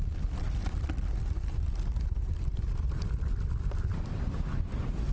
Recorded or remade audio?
recorded